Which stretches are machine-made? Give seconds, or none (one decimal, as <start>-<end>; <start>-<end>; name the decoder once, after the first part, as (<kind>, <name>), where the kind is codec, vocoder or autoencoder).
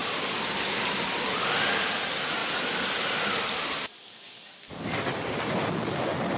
0.0-0.7 (vocoder, BigVGAN v2)